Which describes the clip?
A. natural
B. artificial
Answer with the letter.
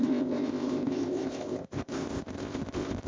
B